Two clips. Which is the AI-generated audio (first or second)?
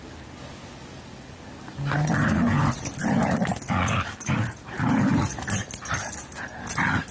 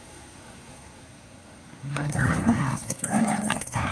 second